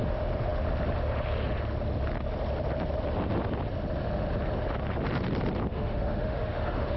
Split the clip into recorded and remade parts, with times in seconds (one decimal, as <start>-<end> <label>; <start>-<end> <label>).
0.0-5.7 recorded; 5.7-7.0 remade